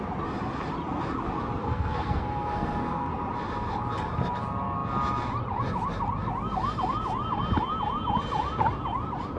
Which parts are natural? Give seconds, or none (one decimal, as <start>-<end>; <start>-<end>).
0.0-1.6; 3.1-9.4